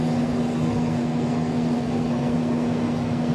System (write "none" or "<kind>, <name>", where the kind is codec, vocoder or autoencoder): codec, SNAC